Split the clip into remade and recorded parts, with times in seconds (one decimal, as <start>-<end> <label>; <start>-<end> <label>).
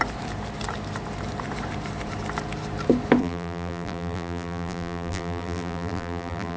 0.0-3.2 recorded; 3.2-6.6 remade